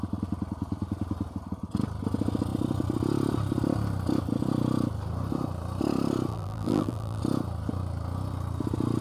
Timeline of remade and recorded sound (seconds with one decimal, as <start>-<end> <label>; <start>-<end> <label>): 0.0-6.3 recorded; 6.3-7.2 remade; 7.2-9.0 recorded